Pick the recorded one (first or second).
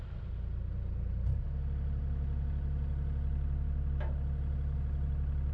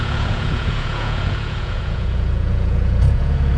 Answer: first